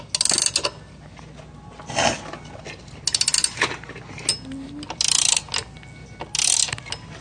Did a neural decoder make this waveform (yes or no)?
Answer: no